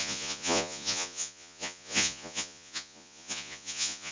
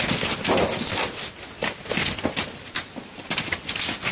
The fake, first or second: first